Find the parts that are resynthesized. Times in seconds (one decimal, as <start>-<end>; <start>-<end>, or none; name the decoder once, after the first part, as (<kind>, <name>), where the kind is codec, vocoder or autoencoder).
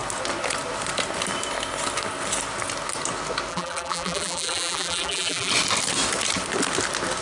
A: 3.5-5.5 (vocoder, BigVGAN v2)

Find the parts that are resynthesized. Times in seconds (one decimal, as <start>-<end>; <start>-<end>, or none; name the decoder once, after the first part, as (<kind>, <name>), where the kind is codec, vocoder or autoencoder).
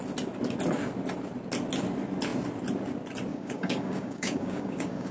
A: 3.3-5.1 (codec, DAC)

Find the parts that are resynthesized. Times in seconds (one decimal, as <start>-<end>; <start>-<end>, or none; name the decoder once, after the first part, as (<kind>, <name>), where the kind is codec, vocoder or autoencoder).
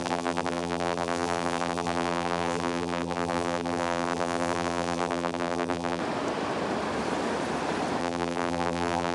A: 0.0-6.0 (vocoder, BigVGAN v2); 8.0-9.1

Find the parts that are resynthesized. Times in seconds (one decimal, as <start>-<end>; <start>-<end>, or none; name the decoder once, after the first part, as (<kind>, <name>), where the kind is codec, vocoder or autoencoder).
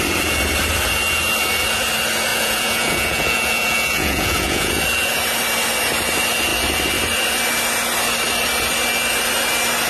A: 2.3-4.8 (vocoder, Vocos)